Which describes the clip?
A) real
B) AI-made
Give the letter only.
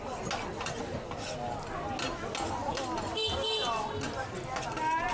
A